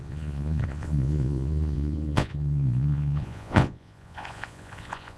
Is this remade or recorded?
remade